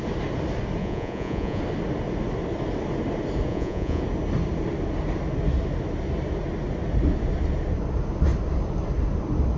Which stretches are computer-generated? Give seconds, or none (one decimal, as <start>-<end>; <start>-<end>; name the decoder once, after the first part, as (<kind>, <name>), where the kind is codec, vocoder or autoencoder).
0.8-1.6 (vocoder, Vocos); 3.5-4.0